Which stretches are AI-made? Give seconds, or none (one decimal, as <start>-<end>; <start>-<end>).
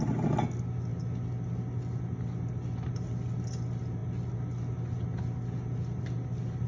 none